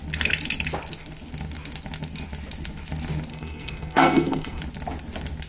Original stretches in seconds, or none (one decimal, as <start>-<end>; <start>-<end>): 0.0-3.3; 4.6-5.5